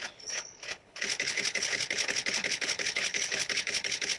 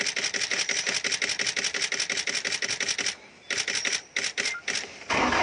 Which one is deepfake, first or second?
first